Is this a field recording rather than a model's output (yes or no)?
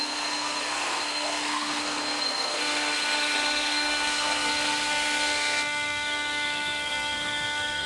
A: no